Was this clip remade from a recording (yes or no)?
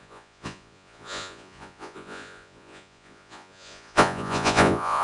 yes